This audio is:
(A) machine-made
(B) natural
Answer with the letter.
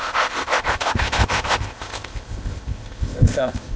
A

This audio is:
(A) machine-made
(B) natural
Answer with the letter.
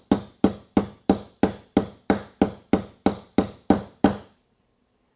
B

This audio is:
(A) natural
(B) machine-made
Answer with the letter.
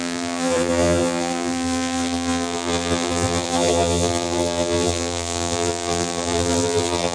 B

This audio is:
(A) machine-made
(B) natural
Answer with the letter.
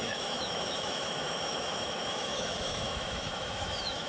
A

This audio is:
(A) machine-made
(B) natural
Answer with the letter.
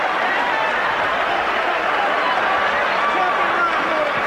B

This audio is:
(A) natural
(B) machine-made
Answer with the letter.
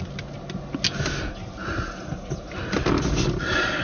A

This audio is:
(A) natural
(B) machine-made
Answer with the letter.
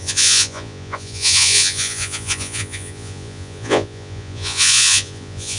B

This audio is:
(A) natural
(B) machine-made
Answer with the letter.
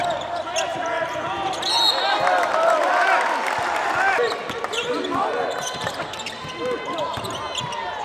A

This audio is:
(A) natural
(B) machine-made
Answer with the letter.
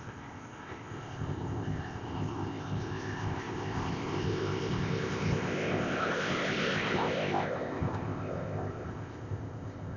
B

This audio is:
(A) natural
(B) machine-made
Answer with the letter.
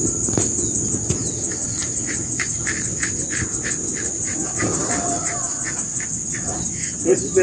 A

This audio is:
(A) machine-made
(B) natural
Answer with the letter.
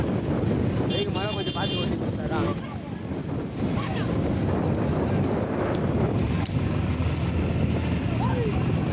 B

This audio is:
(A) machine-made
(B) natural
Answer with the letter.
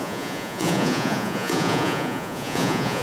A